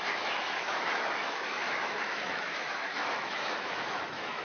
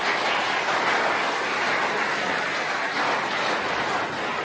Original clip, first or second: second